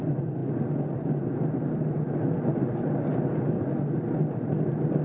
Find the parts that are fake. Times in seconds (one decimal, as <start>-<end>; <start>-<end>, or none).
none